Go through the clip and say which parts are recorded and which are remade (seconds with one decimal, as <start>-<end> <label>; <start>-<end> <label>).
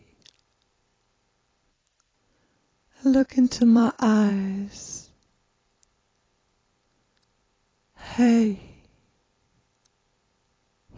0.0-0.9 recorded; 0.9-4.3 remade; 4.3-7.7 recorded; 7.7-9.0 remade; 9.0-11.0 recorded